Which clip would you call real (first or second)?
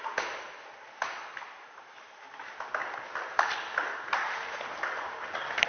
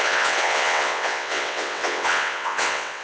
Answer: first